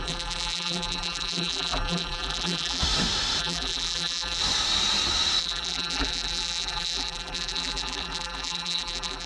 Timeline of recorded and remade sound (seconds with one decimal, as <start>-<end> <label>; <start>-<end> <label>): 0.0-2.8 remade; 2.8-3.4 recorded; 3.4-4.4 remade; 4.4-5.4 recorded; 5.4-9.3 remade